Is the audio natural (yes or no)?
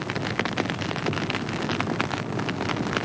yes